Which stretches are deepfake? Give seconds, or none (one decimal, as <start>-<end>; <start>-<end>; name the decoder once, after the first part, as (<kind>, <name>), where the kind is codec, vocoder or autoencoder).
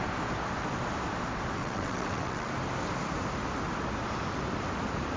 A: 1.6-2.5 (vocoder, WaveNeXt)